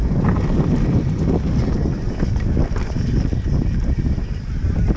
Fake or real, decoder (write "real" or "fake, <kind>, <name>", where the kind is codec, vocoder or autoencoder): real